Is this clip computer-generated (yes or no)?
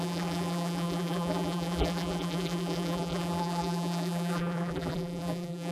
yes